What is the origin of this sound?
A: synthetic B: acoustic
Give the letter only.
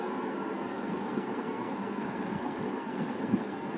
A